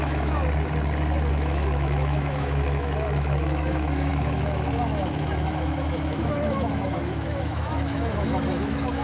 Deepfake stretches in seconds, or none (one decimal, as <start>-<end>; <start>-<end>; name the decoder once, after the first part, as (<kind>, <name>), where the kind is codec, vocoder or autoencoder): 0.0-0.4 (autoencoder, DAC-VAE); 1.3-9.0